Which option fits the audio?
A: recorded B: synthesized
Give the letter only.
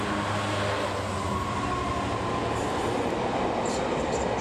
A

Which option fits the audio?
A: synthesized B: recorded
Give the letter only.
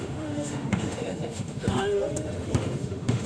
A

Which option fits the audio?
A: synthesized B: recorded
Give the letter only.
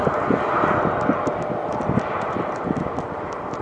B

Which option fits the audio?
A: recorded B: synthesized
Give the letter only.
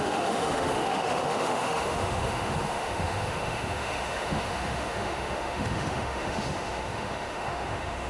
B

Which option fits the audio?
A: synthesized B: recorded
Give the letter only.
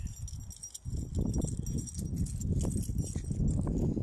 B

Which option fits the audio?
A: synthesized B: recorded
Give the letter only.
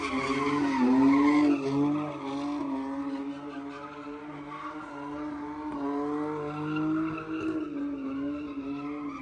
B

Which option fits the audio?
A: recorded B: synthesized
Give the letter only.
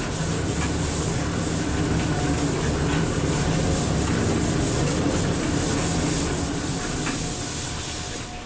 A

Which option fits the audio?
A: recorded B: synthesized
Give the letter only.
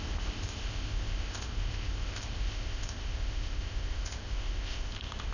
B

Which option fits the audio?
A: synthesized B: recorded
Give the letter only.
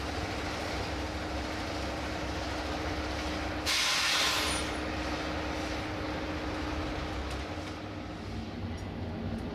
B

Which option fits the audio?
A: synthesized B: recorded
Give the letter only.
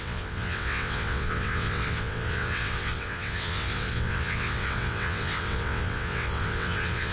A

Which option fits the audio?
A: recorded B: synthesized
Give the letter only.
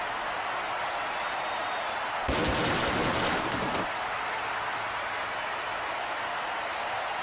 A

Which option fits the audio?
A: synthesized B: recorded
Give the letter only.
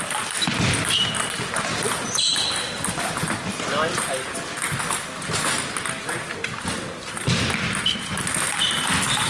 B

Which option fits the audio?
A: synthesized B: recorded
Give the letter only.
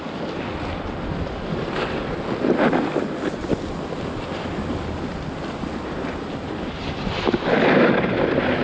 B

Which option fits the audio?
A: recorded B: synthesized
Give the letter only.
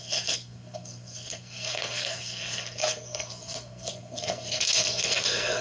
B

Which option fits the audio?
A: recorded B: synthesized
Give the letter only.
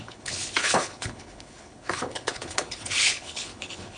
B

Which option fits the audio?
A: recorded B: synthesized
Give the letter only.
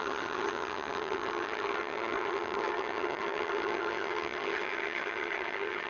B